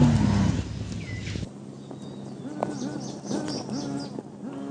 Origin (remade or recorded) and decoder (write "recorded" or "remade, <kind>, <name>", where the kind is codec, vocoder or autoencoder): recorded